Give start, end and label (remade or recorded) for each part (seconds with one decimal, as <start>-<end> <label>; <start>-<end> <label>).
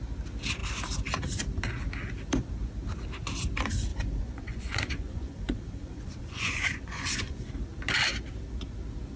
0.0-3.9 recorded; 3.9-7.5 remade; 7.5-9.2 recorded